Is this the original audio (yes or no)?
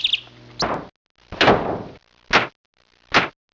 yes